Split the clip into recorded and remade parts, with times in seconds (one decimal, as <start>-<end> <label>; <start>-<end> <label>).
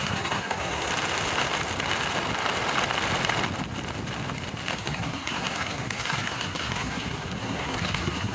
0.0-0.9 remade; 0.9-4.7 recorded; 4.7-8.3 remade